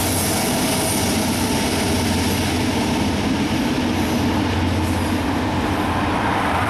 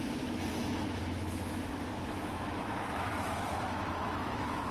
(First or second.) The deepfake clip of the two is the second